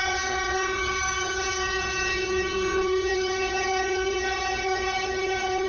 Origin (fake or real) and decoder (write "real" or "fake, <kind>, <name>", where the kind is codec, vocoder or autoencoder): fake, vocoder, HiFi-GAN